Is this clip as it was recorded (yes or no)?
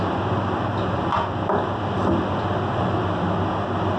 yes